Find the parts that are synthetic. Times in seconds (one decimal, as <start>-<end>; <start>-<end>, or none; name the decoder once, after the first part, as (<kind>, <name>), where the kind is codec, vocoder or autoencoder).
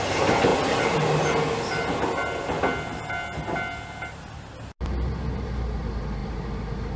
none